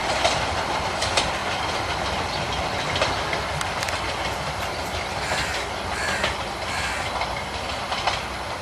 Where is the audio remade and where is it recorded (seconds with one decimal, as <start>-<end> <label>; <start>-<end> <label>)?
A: 0.0-8.6 recorded